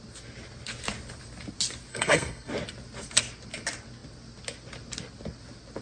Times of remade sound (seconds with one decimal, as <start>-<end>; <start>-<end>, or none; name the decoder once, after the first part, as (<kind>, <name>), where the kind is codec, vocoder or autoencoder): 1.9-2.5 (codec, SNAC)